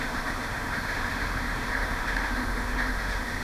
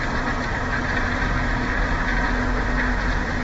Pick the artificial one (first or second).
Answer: first